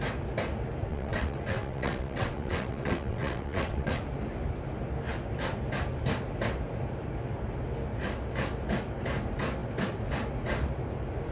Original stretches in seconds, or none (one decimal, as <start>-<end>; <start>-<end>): 0.0-0.9; 4.0-11.3